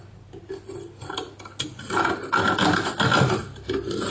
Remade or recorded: recorded